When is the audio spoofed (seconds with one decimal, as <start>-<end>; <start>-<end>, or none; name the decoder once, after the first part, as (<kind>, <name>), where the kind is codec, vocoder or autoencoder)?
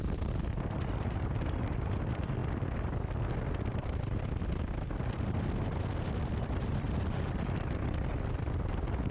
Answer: none